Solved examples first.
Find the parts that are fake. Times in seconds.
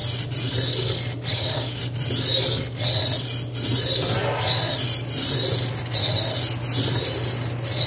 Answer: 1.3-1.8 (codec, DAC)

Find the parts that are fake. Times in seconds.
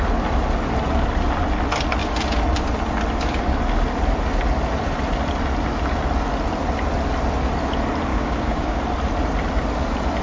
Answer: 8.1-8.8 (codec, DAC)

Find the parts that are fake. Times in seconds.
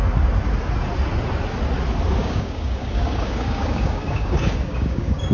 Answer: 2.2-5.3 (codec, DAC)